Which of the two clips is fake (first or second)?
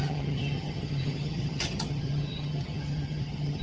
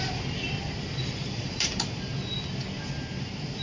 first